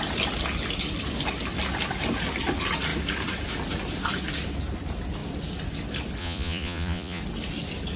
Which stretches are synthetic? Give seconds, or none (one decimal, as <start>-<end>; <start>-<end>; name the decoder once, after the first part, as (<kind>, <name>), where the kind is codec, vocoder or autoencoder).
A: 6.2-7.2 (vocoder, Vocos)